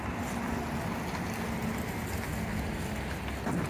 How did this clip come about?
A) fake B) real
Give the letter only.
B